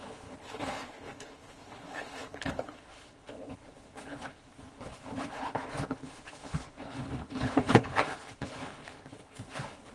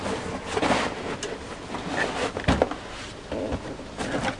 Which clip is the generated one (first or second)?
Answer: first